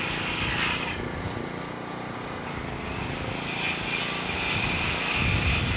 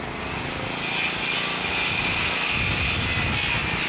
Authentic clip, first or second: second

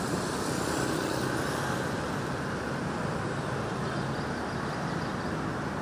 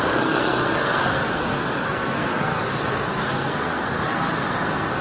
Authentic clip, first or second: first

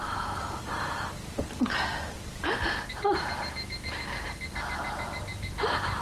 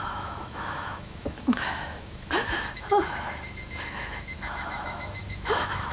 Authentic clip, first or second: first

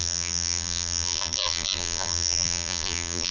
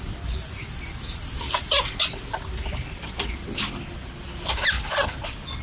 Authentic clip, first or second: second